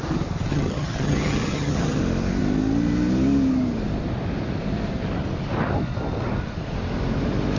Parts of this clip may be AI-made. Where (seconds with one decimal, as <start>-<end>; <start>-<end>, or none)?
0.5-2.0